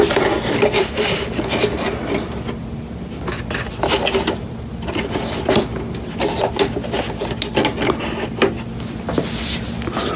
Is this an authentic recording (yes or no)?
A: yes